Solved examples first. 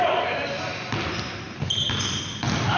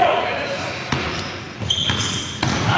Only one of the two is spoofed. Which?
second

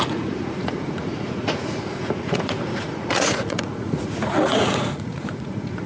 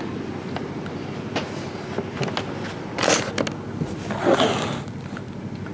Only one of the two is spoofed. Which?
first